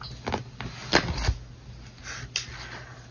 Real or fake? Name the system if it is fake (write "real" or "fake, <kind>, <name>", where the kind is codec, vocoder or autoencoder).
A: real